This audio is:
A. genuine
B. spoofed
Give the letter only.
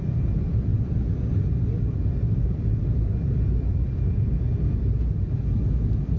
B